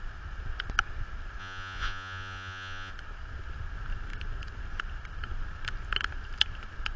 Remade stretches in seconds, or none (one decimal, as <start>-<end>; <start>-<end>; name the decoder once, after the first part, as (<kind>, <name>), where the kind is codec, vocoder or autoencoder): 1.4-2.9 (vocoder, Vocos)

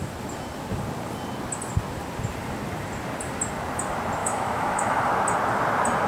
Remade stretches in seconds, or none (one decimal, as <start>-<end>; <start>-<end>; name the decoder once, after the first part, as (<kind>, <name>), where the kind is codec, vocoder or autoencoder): 4.2-5.0 (autoencoder, DAC-VAE)

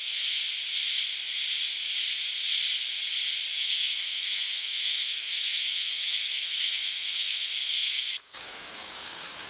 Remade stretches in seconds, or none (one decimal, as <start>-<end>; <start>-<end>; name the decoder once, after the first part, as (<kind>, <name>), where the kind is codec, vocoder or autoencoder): 0.0-0.4 (codec, SNAC); 3.5-9.5

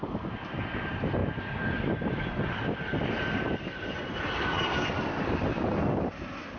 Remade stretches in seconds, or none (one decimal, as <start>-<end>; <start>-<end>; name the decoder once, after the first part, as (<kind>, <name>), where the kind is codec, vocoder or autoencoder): none

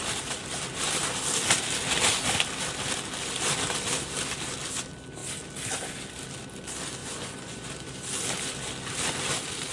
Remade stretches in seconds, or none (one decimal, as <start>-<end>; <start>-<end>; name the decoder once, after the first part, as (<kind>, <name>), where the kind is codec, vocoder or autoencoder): 7.0-7.7 (vocoder, Vocos)

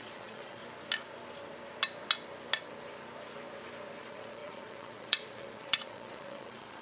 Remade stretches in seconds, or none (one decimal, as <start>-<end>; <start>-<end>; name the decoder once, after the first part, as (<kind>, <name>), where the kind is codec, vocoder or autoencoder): 0.0-0.6 (vocoder, Vocos); 4.0-6.8